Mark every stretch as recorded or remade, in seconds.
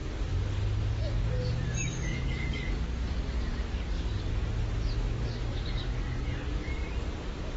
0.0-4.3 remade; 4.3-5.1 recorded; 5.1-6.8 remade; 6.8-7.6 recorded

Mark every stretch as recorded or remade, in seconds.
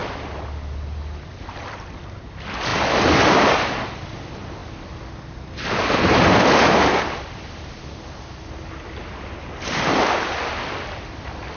0.0-11.6 recorded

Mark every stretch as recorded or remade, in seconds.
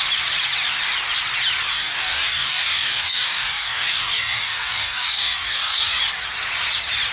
0.0-1.7 recorded; 1.7-6.0 remade; 6.0-7.1 recorded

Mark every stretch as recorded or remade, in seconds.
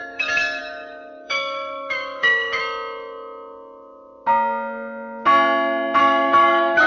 0.0-2.6 remade; 2.6-6.0 recorded; 6.0-6.9 remade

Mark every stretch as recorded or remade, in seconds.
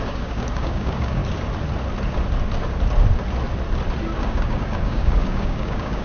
0.0-1.2 remade; 1.2-4.2 recorded; 4.2-6.0 remade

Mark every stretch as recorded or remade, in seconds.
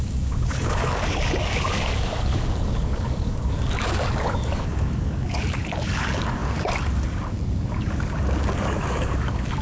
0.0-9.6 remade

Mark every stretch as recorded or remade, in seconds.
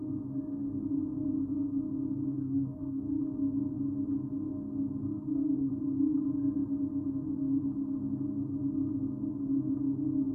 0.0-2.4 recorded; 2.4-3.2 remade; 3.2-5.1 recorded; 5.1-5.7 remade; 5.7-10.3 recorded